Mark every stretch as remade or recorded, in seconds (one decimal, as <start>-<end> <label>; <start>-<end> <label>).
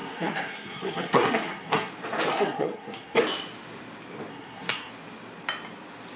0.0-1.9 remade; 1.9-2.3 recorded; 2.3-3.2 remade; 3.2-4.3 recorded; 4.3-4.9 remade; 4.9-6.2 recorded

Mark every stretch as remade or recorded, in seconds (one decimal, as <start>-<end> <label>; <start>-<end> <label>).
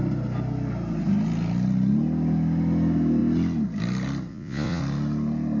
0.0-4.3 recorded; 4.3-4.8 remade; 4.8-5.6 recorded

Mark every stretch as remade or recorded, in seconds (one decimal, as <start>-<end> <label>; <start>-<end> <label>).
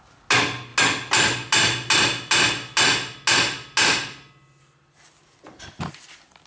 0.0-6.5 recorded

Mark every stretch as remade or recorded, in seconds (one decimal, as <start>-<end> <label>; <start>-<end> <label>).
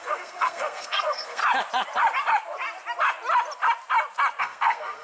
0.0-1.4 remade; 1.4-4.4 recorded; 4.4-5.0 remade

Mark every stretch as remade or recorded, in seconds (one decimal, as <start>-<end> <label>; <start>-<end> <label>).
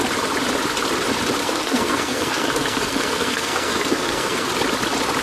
0.0-1.4 recorded; 1.4-4.5 remade; 4.5-5.2 recorded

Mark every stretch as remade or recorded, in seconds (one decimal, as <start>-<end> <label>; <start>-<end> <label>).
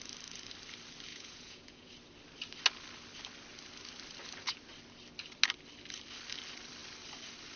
0.0-1.1 recorded; 1.1-1.9 remade; 1.9-7.6 recorded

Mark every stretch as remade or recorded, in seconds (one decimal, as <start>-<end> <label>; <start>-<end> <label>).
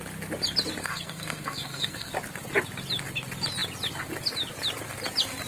0.0-0.8 recorded; 0.8-2.1 remade; 2.1-5.5 recorded